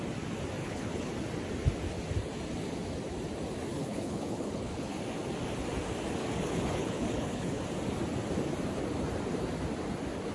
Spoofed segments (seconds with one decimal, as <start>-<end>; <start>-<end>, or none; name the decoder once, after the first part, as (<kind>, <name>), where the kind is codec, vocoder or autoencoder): 0.6-1.1 (codec, HILCodec); 3.7-5.0; 6.2-7.6